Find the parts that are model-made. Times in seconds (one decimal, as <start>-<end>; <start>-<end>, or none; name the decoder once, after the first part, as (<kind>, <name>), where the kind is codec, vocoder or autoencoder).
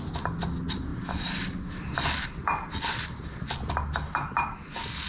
none